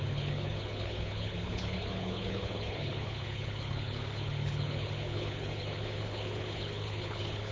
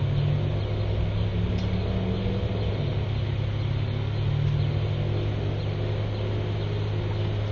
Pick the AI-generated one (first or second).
first